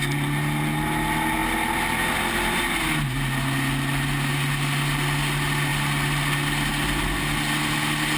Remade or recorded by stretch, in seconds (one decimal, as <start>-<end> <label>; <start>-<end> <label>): 0.0-8.2 recorded